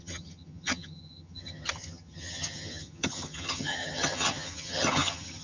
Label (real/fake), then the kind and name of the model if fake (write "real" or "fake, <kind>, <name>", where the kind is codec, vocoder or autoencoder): fake, vocoder, HiFi-GAN